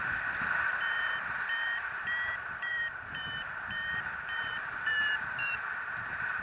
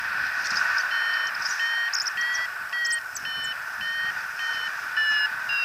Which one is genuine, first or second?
second